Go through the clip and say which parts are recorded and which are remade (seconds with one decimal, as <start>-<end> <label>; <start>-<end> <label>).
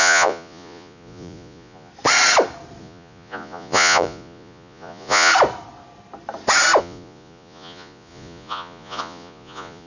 0.0-1.9 remade; 1.9-2.8 recorded; 2.8-5.3 remade; 5.3-6.8 recorded; 6.8-9.9 remade